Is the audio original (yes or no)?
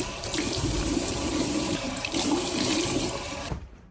no